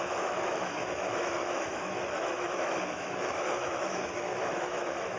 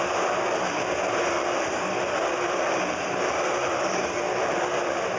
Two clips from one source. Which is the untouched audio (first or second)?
second